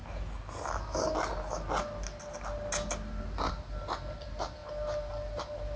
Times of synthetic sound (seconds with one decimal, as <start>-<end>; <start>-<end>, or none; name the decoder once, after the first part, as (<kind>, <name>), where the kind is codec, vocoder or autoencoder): none